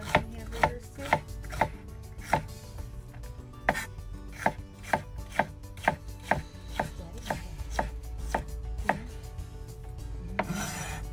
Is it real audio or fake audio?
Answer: real